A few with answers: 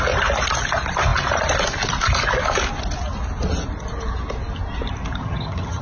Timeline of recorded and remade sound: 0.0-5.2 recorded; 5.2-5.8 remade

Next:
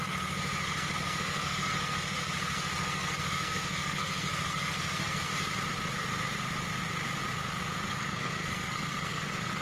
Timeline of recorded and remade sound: 0.0-5.3 remade; 5.3-7.9 recorded; 7.9-9.6 remade

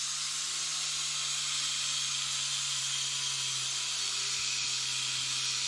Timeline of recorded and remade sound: 0.0-5.7 recorded

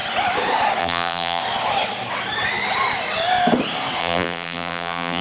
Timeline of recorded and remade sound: 0.0-0.8 recorded; 0.8-1.4 remade; 1.4-4.0 recorded; 4.0-5.2 remade

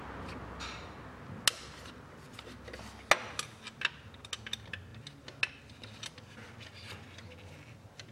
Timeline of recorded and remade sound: 0.0-8.1 recorded